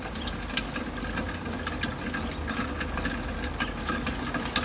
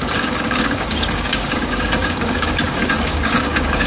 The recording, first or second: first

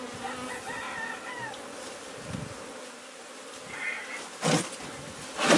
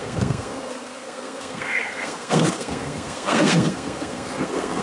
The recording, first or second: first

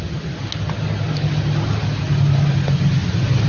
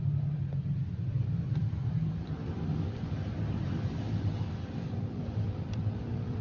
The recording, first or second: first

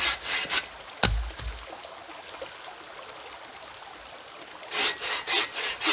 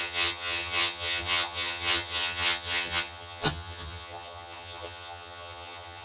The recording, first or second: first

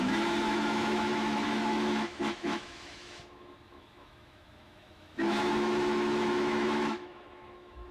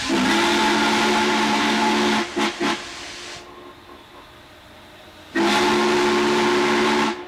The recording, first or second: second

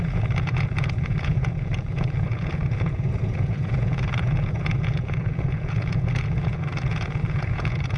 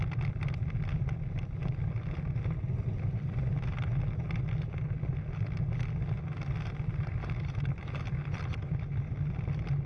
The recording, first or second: second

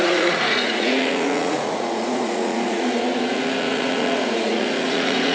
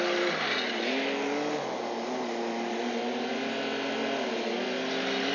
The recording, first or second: second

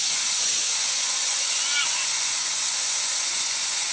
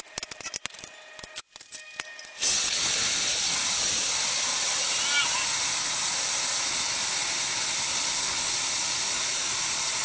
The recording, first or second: second